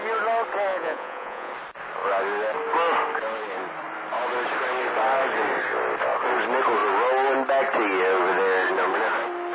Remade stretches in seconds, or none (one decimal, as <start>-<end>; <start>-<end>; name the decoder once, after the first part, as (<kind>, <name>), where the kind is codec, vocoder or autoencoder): 0.7-1.5 (vocoder, Vocos)